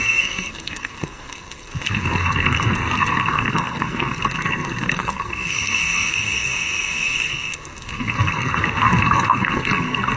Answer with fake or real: fake